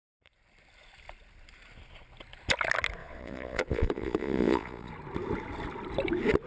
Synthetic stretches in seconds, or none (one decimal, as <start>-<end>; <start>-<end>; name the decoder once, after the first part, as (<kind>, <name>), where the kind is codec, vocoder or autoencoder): 3.0-4.9 (vocoder, Vocos)